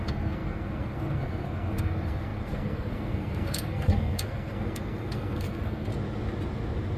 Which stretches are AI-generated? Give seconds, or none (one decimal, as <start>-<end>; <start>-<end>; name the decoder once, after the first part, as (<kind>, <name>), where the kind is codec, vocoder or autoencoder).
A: 0.0-5.9 (codec, SNAC)